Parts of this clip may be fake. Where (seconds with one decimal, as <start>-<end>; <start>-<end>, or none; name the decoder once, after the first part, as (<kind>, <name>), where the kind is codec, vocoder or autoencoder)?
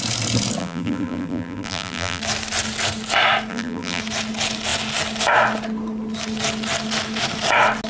0.6-2.2 (vocoder, BigVGAN v2); 3.5-4.0